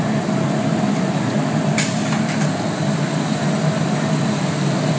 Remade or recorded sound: recorded